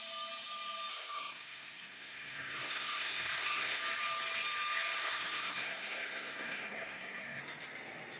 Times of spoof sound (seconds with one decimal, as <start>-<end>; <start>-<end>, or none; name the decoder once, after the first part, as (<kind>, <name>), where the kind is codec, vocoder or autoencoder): 0.9-3.8 (codec, SNAC); 5.0-7.4